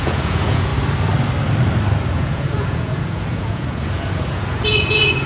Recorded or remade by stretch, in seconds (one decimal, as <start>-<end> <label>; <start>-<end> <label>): 0.0-0.7 remade; 0.7-2.1 recorded; 2.1-5.3 remade